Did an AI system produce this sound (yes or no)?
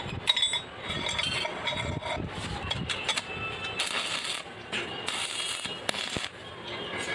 no